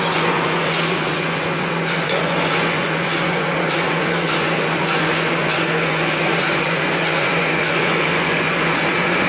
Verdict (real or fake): fake